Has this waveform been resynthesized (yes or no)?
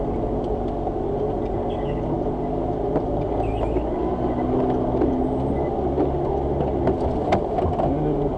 no